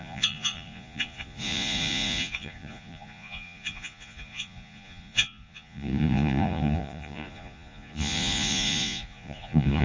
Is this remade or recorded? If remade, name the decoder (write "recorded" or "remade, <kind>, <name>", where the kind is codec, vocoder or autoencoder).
remade, vocoder, Vocos